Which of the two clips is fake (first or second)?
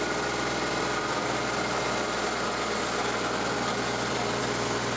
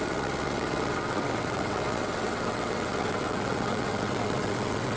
second